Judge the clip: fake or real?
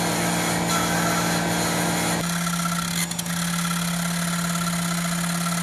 real